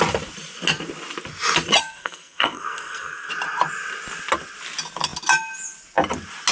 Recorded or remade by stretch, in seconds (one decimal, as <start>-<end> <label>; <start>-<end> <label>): 0.0-1.8 recorded; 1.8-3.3 remade; 3.3-6.5 recorded